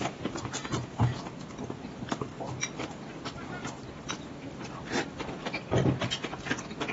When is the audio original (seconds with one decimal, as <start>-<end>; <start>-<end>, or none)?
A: 0.0-0.7; 1.3-6.9